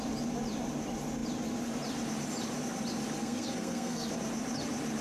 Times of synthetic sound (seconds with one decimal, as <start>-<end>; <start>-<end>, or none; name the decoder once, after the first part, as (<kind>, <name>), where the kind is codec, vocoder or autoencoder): 3.2-4.1 (codec, SNAC)